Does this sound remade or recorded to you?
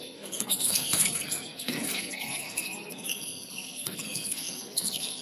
remade